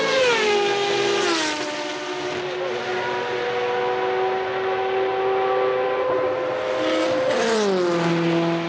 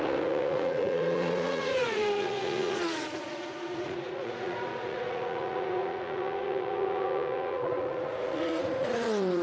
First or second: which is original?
first